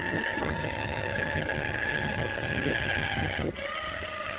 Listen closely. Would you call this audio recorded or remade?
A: remade